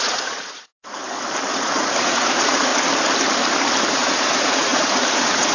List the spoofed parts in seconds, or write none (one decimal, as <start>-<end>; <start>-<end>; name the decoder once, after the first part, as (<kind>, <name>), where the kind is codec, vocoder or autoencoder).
0.0-1.0 (vocoder, Vocos); 1.5-2.7; 3.9-5.5